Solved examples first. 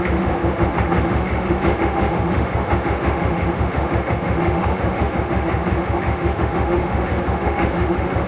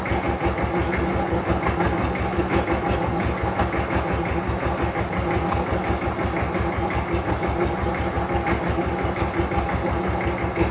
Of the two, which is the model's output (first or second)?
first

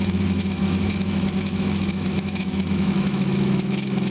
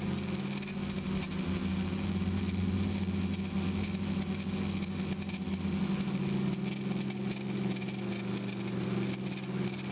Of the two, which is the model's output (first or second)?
first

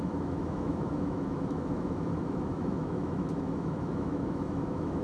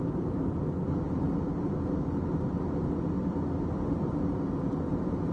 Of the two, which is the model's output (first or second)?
first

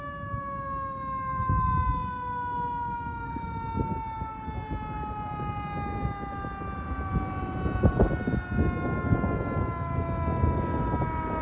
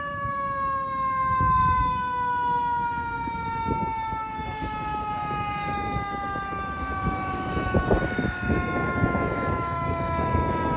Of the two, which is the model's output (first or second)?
second